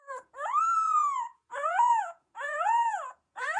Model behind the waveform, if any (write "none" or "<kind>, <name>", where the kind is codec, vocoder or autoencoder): vocoder, Vocos